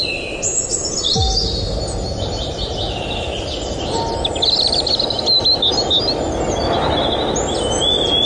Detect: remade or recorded recorded